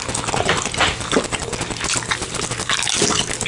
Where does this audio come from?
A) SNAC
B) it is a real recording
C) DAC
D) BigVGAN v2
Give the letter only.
B